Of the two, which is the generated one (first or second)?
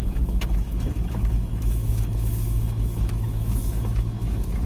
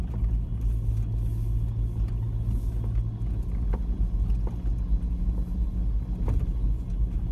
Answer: first